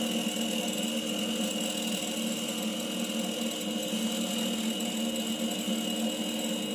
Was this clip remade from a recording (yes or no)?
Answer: no